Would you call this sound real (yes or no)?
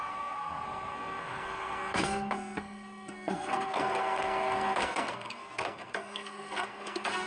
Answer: no